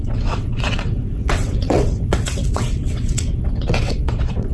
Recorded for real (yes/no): no